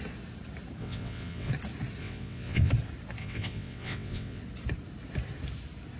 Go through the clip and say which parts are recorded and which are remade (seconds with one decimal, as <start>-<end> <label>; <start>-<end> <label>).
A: 0.0-0.8 recorded; 0.8-1.5 remade; 1.5-2.0 recorded; 2.0-2.7 remade; 2.7-3.2 recorded; 3.2-4.4 remade; 4.4-6.0 recorded